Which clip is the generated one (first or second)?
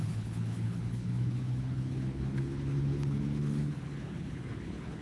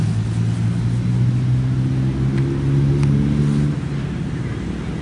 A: first